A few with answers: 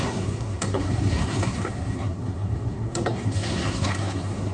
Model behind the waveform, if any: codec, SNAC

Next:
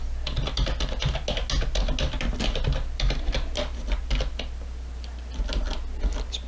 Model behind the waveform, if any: none